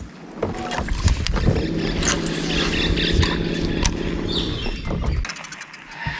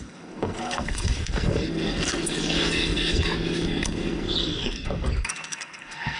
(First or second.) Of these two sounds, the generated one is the second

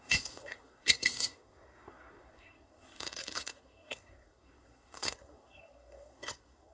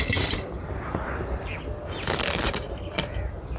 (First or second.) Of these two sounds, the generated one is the first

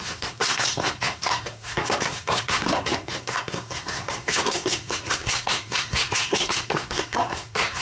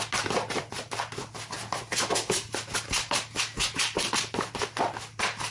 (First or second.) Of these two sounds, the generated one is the first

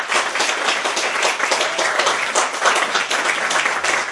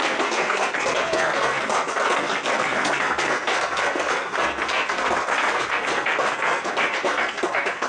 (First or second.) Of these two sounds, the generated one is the second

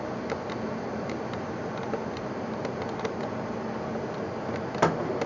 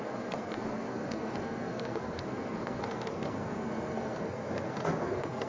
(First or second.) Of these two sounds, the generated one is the second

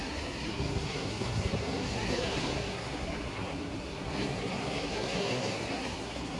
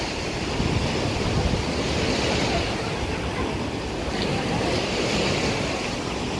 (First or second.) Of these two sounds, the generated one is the first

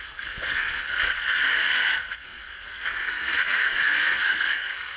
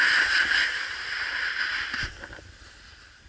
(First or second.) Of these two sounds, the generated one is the first